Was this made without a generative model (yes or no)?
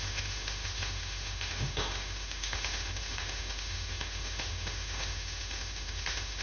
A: no